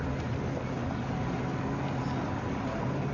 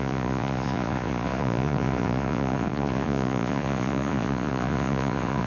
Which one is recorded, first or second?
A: first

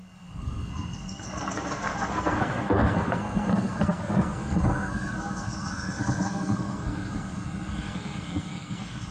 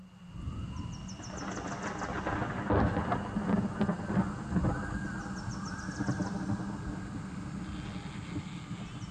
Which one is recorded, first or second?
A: second